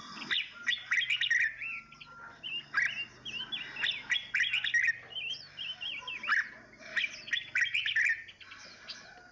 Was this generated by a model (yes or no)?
no